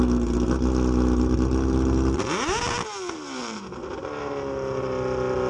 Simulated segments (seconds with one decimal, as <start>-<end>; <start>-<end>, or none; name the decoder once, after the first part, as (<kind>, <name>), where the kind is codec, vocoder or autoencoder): none